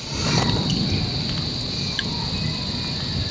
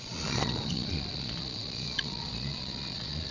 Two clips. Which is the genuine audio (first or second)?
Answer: first